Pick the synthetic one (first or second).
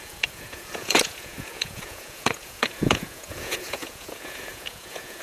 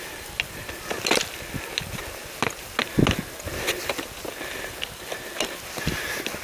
first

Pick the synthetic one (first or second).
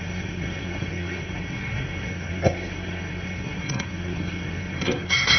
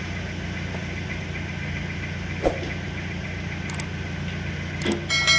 first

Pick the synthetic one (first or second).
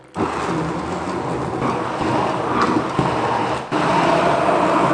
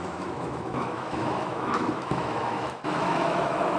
second